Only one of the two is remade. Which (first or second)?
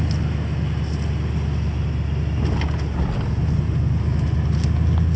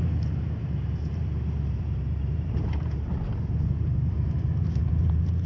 second